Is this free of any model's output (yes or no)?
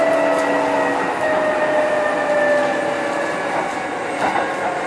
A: yes